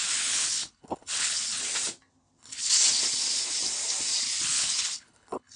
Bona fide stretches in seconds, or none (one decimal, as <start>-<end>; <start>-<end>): 1.6-2.4; 2.8-4.2